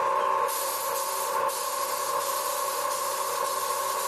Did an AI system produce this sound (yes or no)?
no